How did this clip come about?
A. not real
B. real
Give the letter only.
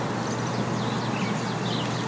B